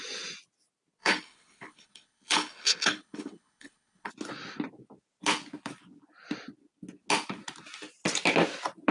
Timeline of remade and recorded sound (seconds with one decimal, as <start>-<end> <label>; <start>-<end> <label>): 0.0-1.0 recorded; 1.0-4.1 remade; 4.1-8.9 recorded

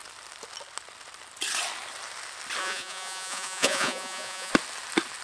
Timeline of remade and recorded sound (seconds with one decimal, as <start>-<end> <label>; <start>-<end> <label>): 0.0-2.6 recorded; 2.6-4.5 remade; 4.5-5.2 recorded